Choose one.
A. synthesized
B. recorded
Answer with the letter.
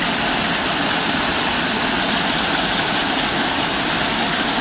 B